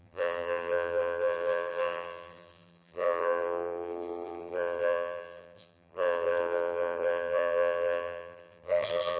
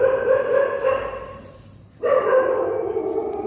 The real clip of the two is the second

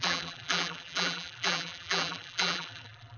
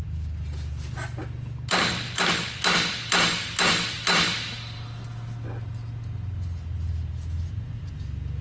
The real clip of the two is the second